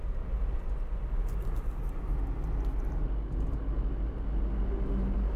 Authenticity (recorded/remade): recorded